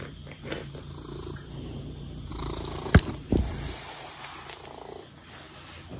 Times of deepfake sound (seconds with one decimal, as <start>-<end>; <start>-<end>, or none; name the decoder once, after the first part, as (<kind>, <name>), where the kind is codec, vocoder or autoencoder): 2.3-3.0 (vocoder, BigVGAN v2)